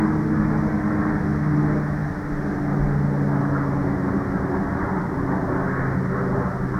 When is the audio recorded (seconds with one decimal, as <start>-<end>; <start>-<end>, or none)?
0.0-6.8